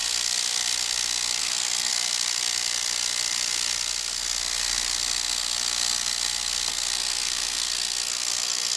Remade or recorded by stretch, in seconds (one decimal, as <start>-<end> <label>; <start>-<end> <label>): 0.0-1.4 recorded; 1.4-1.9 remade; 1.9-6.7 recorded; 6.7-8.8 remade